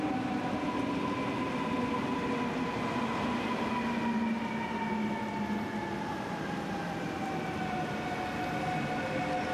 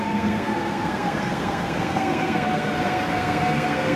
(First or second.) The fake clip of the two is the second